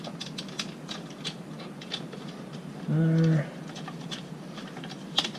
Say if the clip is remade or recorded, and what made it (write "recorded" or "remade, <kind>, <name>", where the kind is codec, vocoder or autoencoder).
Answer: recorded